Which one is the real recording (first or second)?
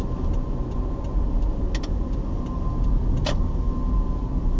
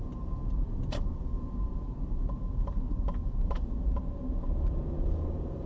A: first